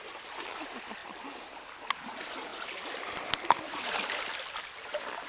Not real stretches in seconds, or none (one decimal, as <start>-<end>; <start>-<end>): none